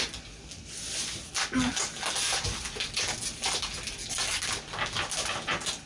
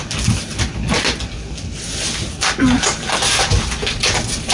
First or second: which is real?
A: first